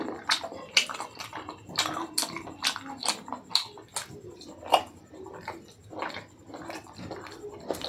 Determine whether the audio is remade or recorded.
recorded